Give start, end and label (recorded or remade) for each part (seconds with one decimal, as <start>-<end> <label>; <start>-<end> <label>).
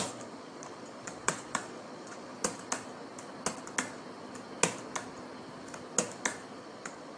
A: 0.0-2.3 remade; 2.3-6.6 recorded; 6.6-7.2 remade